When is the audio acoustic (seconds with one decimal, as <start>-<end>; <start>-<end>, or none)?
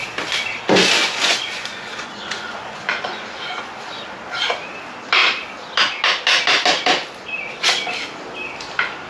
0.0-1.0; 3.8-9.1